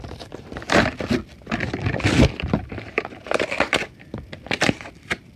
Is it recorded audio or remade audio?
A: remade